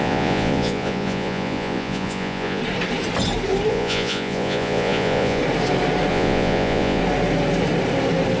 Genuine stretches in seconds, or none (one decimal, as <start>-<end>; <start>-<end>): 2.6-3.7; 5.4-6.1; 7.0-8.4